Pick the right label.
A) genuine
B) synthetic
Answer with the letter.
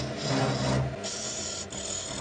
A